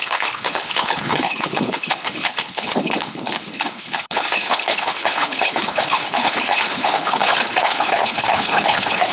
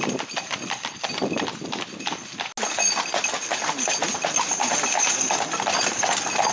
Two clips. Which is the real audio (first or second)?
second